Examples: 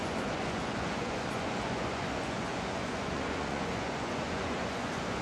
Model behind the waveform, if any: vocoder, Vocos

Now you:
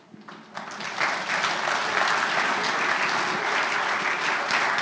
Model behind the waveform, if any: none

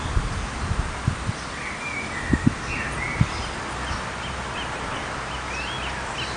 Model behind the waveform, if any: none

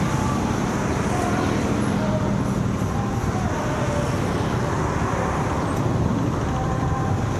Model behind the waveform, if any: none